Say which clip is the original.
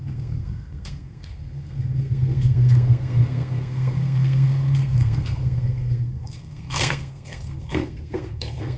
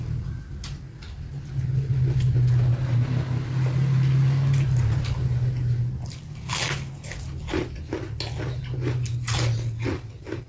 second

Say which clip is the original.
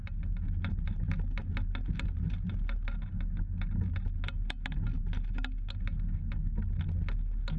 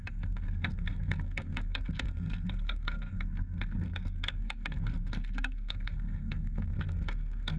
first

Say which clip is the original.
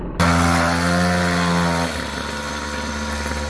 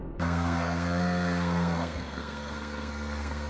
first